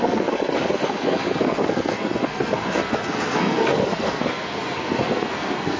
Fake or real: fake